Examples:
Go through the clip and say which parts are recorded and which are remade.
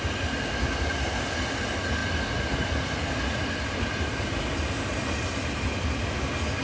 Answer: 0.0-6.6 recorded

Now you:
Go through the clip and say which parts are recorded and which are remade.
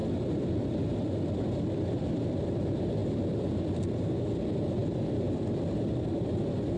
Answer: 0.0-3.0 recorded; 3.0-3.5 remade; 3.5-4.8 recorded; 4.8-6.3 remade; 6.3-6.8 recorded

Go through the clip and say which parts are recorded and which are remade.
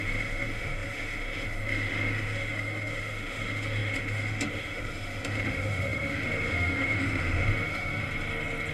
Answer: 0.0-8.0 remade; 8.0-8.7 recorded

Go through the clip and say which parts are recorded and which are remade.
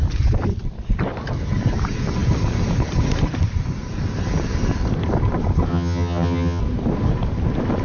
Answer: 0.0-5.7 recorded; 5.7-6.6 remade; 6.6-7.8 recorded